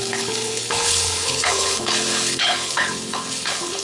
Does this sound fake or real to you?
fake